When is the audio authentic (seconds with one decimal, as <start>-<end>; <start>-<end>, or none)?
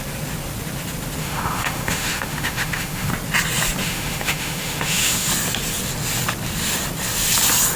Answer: 0.0-1.2; 3.1-3.8; 5.3-7.8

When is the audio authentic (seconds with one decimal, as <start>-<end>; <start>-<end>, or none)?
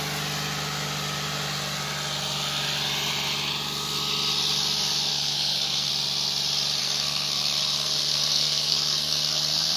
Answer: 0.0-5.1; 5.9-6.8